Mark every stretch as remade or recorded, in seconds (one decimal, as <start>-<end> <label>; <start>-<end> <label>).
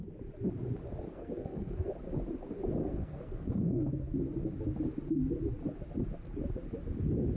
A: 0.0-1.1 recorded; 1.1-1.9 remade; 1.9-2.8 recorded; 2.8-3.9 remade; 3.9-7.4 recorded